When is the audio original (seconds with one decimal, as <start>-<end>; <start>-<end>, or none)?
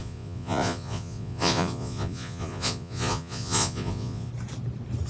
4.3-5.1